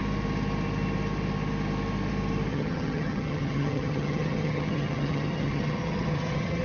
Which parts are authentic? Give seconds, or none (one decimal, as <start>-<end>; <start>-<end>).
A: 0.0-2.5